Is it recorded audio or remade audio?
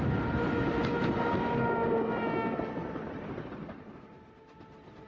recorded